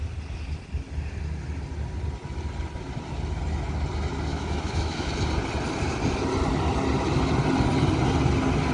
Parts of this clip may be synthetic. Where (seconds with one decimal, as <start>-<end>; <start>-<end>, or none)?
4.3-5.1